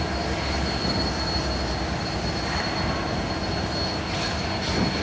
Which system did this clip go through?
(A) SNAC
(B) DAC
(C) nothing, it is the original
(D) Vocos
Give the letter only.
C